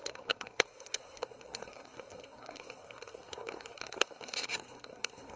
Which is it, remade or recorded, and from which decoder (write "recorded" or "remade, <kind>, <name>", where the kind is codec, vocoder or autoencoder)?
remade, codec, SNAC